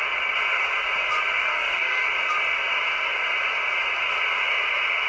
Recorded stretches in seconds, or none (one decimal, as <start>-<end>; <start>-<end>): 0.0-1.4; 2.1-5.1